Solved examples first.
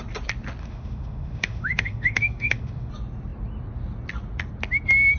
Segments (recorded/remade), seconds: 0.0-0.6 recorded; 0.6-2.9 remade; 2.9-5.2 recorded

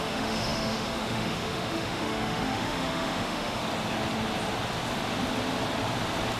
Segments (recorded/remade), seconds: 0.0-3.6 remade; 3.6-6.4 recorded

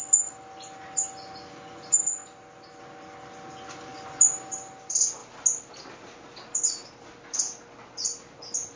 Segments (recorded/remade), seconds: 0.0-8.8 recorded

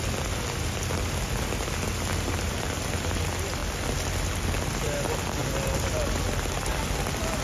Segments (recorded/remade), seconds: 0.0-7.4 recorded

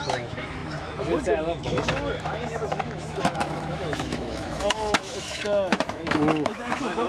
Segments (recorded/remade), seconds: 0.0-7.1 remade

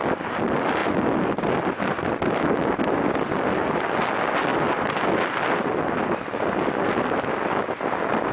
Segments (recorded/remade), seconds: 0.0-8.3 recorded